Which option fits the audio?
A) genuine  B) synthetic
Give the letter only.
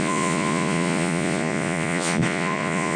B